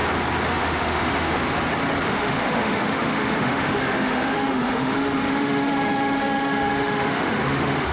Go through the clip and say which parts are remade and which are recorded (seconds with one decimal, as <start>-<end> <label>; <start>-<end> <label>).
0.0-0.5 recorded; 0.5-1.4 remade; 1.4-2.1 recorded; 2.1-7.9 remade